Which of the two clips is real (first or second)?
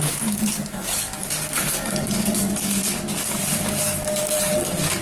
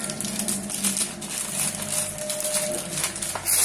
second